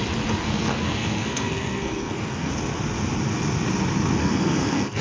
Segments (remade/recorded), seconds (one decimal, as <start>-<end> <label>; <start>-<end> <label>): 0.0-0.4 recorded; 0.4-2.5 remade; 2.5-4.2 recorded; 4.2-5.0 remade